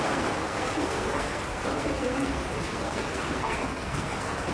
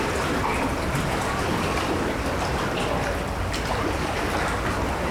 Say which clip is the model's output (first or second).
first